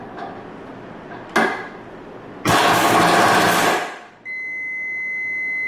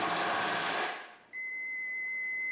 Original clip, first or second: first